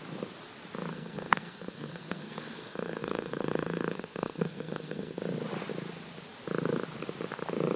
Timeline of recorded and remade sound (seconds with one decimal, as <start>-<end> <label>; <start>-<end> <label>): 0.0-0.9 recorded; 0.9-5.2 remade; 5.2-7.8 recorded